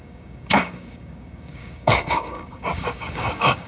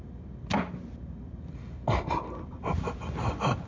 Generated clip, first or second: first